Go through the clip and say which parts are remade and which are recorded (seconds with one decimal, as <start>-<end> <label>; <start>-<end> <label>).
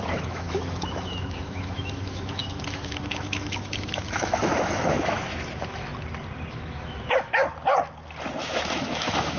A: 0.0-5.9 remade; 5.9-6.5 recorded; 6.5-7.5 remade; 7.5-8.4 recorded; 8.4-9.4 remade